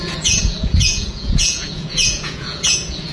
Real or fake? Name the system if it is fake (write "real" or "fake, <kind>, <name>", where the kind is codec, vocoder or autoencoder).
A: fake, vocoder, Vocos